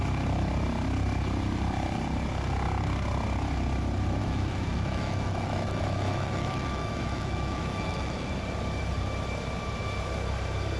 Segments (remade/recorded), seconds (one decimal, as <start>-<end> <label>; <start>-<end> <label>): 0.0-4.2 recorded; 4.2-8.3 remade; 8.3-10.8 recorded